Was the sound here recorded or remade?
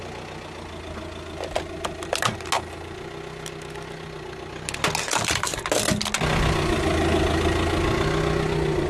recorded